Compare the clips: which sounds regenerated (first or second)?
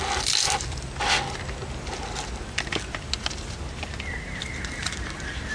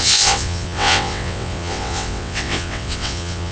second